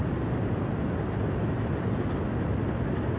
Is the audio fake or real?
real